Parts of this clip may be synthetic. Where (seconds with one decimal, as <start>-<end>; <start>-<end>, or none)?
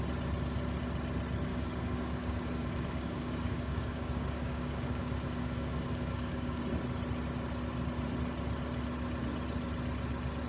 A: 1.5-6.6